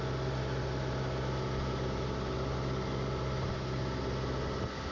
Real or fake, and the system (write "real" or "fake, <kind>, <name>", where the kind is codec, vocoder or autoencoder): real